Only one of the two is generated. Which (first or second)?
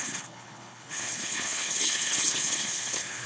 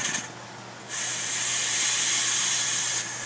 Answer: first